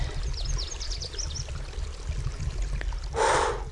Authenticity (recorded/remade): recorded